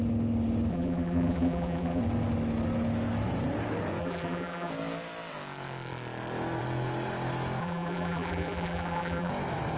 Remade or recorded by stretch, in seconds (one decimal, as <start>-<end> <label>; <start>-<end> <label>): 0.0-0.7 recorded; 0.7-2.0 remade; 2.0-4.0 recorded; 4.0-4.7 remade; 4.7-7.6 recorded; 7.6-9.3 remade; 9.3-9.8 recorded